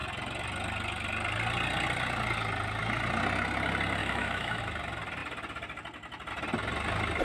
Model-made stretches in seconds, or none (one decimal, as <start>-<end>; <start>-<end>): 4.0-4.6